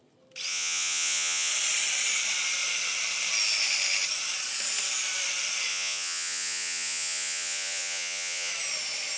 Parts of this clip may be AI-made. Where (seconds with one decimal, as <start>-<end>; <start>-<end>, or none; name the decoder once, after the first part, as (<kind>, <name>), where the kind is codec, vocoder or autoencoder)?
0.5-1.5 (vocoder, Vocos); 5.7-8.5